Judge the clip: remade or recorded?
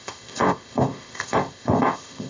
remade